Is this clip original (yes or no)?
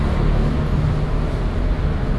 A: yes